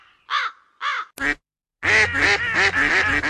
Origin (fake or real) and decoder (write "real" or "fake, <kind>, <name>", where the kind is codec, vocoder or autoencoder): real